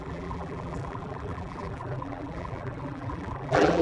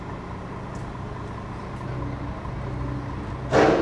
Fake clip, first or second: first